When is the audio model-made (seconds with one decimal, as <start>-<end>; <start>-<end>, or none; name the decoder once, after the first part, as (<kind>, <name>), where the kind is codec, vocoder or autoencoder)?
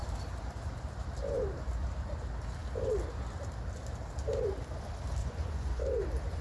5.2-5.8 (vocoder, Vocos)